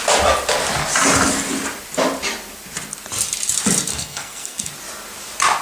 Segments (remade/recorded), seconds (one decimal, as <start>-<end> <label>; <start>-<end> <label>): 0.0-3.9 recorded; 3.9-4.7 remade; 4.7-5.6 recorded